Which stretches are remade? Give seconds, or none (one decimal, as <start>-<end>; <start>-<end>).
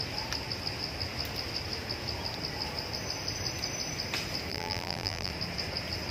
4.5-5.3